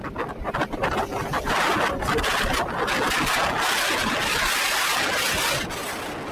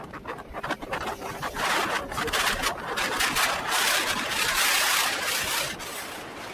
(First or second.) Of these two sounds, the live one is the first